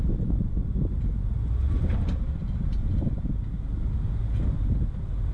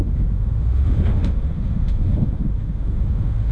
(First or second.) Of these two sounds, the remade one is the second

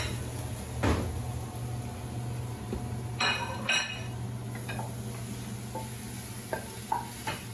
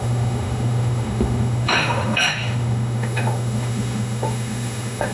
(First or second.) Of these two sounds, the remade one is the second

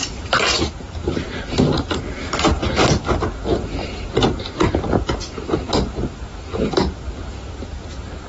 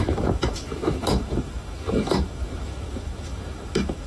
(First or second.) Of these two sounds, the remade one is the second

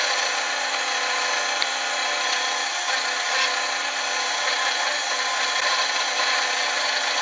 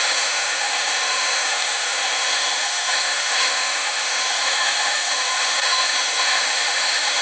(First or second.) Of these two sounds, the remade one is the second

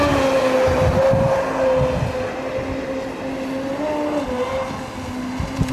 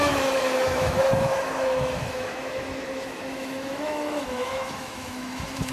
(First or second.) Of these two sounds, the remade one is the second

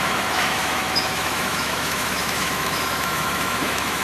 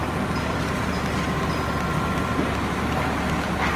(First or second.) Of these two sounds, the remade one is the first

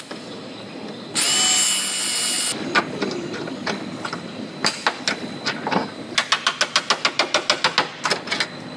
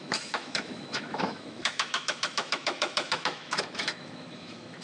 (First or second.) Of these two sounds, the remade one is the second